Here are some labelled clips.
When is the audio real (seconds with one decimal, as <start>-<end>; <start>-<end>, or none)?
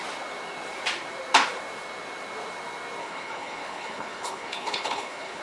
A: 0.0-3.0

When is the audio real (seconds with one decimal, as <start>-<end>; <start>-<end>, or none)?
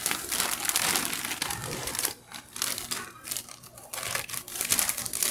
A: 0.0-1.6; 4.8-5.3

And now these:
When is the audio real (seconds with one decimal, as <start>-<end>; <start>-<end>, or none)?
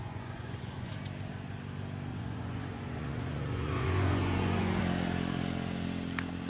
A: 0.9-2.1; 4.8-6.5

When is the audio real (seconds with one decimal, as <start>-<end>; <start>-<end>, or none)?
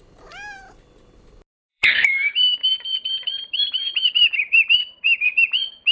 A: 0.0-1.7; 5.2-5.9